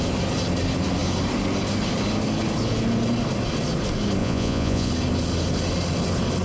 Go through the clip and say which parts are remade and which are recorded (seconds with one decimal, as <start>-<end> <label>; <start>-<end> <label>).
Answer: 0.0-4.2 recorded; 4.2-4.9 remade; 4.9-6.4 recorded